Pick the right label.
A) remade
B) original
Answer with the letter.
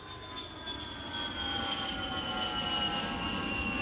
B